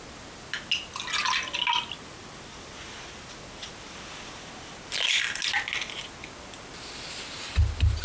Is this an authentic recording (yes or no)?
yes